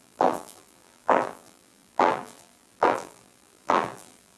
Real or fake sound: fake